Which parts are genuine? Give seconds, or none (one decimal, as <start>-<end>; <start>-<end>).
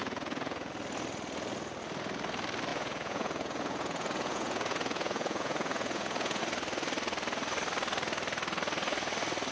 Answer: 0.7-2.7; 6.4-9.5